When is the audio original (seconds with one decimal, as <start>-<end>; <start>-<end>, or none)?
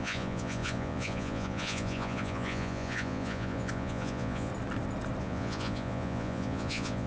4.5-5.2